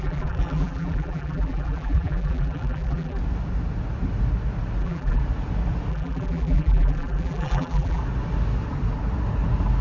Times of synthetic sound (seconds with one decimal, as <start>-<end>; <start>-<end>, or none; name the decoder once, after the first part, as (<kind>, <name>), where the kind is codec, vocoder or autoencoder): 0.0-3.2 (vocoder, BigVGAN v2); 4.8-5.2; 5.9-8.0